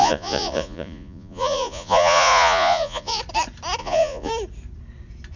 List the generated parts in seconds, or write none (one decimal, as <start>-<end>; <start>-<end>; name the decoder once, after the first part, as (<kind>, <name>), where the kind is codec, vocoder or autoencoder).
0.0-3.2 (vocoder, Vocos); 3.8-4.3

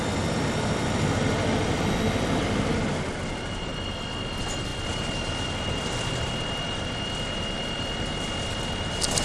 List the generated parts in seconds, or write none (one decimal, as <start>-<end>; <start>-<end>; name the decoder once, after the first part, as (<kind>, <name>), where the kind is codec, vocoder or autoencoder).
4.7-7.8 (vocoder, BigVGAN v2)

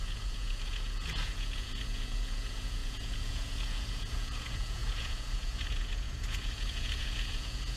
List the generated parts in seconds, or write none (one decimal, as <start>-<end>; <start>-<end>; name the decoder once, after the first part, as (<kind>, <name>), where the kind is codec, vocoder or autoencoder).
0.0-7.8 (vocoder, Vocos)